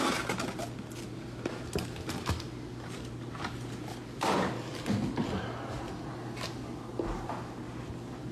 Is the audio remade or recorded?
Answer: recorded